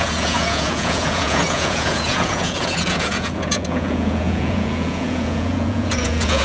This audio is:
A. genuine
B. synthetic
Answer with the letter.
B